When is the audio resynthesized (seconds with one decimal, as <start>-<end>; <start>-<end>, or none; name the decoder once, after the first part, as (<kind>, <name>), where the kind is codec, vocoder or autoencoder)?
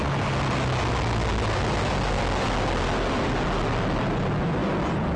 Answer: none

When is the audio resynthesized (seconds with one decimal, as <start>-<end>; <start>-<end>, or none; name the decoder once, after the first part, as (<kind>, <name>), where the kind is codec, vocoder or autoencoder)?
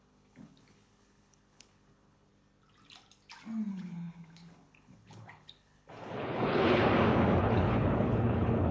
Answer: 0.0-2.3 (codec, HILCodec); 3.7-6.8; 7.4-8.7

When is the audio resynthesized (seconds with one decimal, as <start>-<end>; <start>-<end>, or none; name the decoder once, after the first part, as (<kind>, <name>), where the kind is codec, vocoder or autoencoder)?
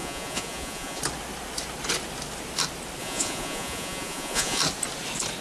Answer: 0.0-1.0 (vocoder, Vocos); 3.0-4.6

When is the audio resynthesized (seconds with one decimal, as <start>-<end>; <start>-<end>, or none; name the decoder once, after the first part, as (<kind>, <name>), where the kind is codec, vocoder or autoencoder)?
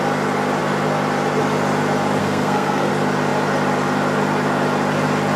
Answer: 2.2-2.9 (codec, SNAC)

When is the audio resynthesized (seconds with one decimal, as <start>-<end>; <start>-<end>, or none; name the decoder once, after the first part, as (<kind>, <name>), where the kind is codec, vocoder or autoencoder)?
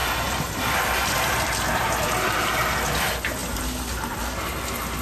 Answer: 0.0-3.0 (vocoder, BigVGAN v2)